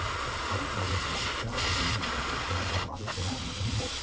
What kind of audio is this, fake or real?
fake